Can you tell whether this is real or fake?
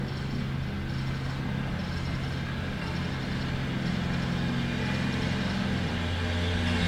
real